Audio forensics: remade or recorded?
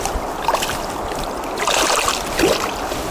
recorded